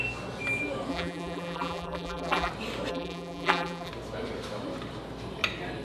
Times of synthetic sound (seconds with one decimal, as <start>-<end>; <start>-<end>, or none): 0.9-2.5; 2.9-3.9